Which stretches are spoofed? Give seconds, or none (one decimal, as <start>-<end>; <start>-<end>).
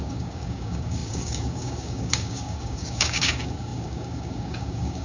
0.0-5.0